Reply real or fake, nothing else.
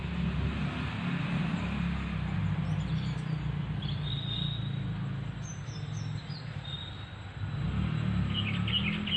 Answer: real